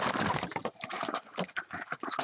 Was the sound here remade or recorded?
recorded